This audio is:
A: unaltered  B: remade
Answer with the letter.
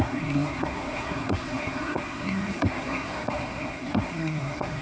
B